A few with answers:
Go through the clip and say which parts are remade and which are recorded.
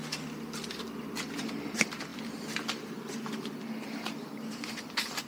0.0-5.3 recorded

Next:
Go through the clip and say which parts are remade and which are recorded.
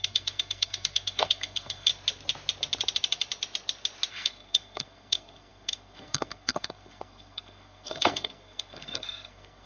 0.0-1.9 remade; 1.9-4.1 recorded; 4.1-9.7 remade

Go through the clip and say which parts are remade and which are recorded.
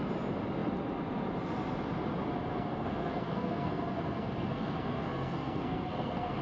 0.0-2.5 recorded; 2.5-6.4 remade